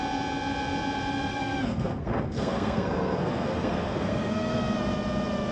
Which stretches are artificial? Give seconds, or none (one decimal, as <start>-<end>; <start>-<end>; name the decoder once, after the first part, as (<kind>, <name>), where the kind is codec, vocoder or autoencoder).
1.3-4.6 (codec, SNAC)